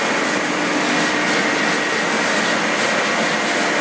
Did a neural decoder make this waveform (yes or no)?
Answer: no